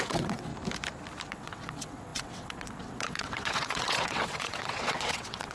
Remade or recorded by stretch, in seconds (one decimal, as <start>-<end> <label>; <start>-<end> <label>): 0.0-0.5 remade; 0.5-1.3 recorded; 1.3-5.5 remade